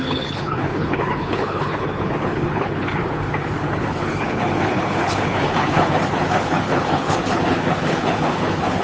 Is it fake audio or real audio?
fake